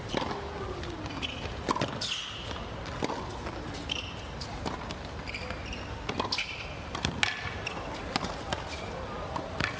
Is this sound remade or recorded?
recorded